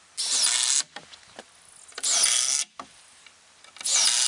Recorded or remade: recorded